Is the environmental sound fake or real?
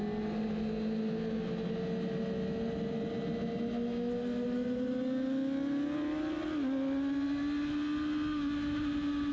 real